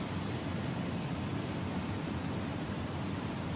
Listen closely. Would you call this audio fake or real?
real